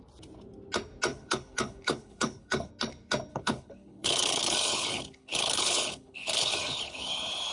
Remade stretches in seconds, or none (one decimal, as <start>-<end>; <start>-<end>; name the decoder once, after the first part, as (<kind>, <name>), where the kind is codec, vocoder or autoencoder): 1.1-2.7 (codec, HILCodec); 3.3-7.5